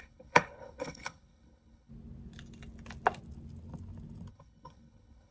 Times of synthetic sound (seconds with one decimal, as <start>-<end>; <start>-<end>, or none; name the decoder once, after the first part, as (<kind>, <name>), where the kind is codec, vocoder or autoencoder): 0.0-1.9 (codec, HILCodec); 4.3-5.3